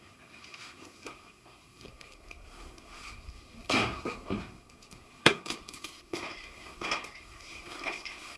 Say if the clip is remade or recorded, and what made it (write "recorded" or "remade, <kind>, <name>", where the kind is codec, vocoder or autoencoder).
remade, codec, SNAC